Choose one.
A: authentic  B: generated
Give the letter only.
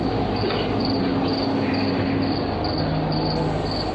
A